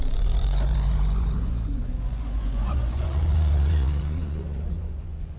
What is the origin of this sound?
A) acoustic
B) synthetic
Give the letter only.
B